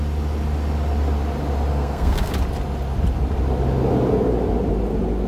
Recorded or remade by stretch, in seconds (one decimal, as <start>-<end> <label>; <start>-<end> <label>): 0.0-1.7 recorded; 1.7-2.3 remade; 2.3-5.3 recorded